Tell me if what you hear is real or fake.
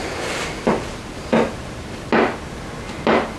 real